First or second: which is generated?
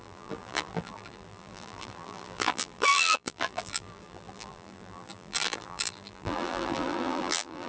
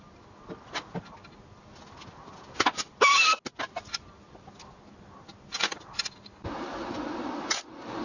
first